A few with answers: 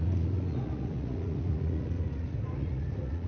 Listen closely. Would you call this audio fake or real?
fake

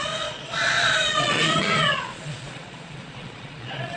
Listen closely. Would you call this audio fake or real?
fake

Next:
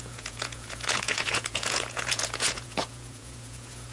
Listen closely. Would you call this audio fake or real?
fake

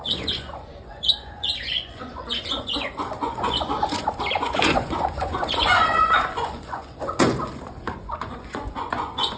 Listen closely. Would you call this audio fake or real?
fake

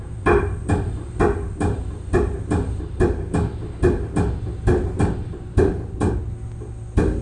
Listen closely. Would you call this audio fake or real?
real